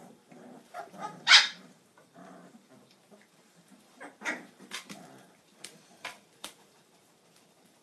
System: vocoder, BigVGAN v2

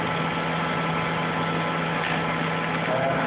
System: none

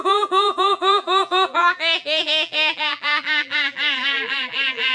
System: vocoder, BigVGAN v2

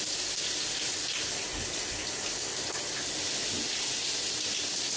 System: none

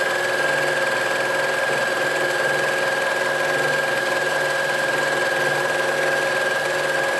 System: none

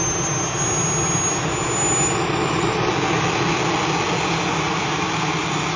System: none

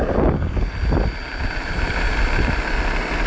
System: none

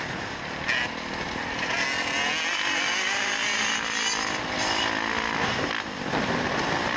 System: none